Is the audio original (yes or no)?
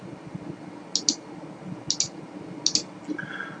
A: yes